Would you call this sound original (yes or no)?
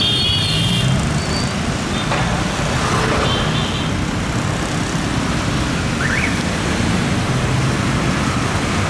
yes